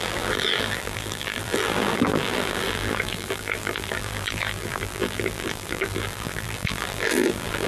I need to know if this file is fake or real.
fake